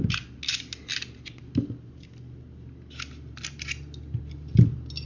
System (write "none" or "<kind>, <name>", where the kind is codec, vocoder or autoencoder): none